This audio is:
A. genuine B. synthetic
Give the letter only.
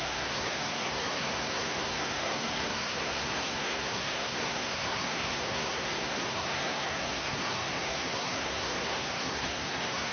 B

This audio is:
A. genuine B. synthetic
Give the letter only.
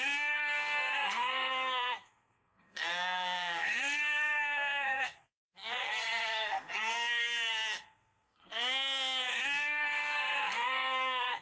B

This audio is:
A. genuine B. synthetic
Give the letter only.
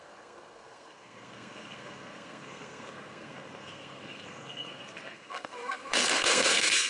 B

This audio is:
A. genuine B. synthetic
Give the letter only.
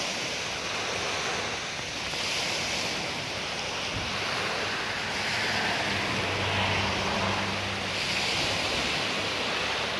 A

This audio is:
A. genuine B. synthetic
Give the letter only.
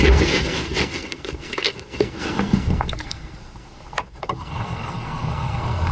B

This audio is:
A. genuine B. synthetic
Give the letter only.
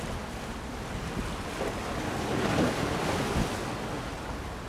A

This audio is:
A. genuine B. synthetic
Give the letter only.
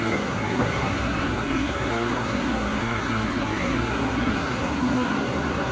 B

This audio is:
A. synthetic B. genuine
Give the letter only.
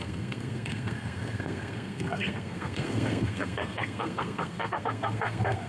A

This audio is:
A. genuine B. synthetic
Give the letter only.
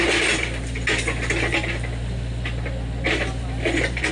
A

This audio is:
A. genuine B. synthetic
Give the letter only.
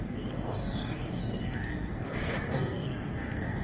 B